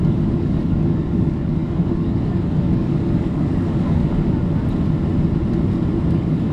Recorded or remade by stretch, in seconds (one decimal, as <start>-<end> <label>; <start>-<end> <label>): 0.0-4.0 remade; 4.0-6.1 recorded; 6.1-6.5 remade